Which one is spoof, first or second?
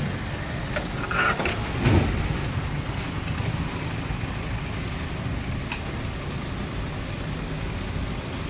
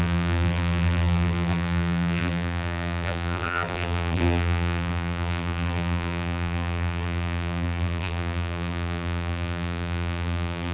second